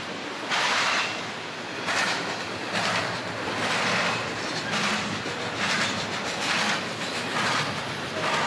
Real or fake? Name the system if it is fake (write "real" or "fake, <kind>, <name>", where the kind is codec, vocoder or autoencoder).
real